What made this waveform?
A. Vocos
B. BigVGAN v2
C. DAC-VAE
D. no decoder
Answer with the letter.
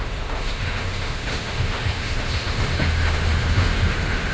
C